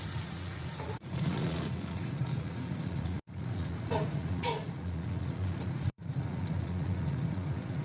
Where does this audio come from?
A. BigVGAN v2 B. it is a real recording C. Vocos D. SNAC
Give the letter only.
C